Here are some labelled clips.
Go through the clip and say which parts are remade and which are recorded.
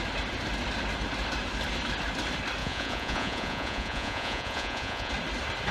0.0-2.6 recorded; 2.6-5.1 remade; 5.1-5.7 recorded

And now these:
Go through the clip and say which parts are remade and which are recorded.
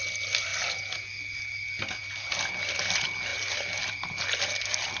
0.0-5.0 recorded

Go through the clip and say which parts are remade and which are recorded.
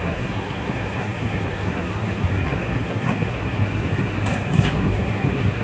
0.0-5.6 remade